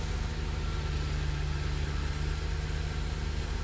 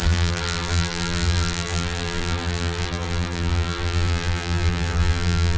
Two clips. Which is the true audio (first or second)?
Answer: first